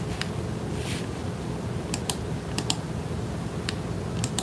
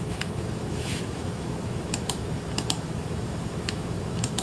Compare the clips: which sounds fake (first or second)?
second